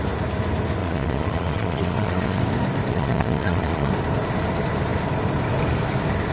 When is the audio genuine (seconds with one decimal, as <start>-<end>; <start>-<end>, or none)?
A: 0.0-0.8; 2.4-2.9; 3.9-6.3